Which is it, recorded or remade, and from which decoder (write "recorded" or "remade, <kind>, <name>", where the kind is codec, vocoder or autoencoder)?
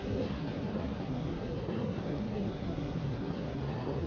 remade, codec, SNAC